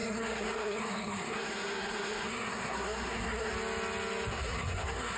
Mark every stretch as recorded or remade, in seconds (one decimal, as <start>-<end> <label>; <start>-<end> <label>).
0.0-3.5 remade; 3.5-4.3 recorded; 4.3-5.2 remade